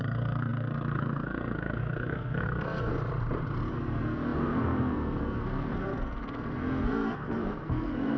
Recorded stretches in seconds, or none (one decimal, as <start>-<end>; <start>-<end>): 2.9-3.7